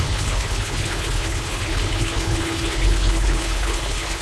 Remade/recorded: remade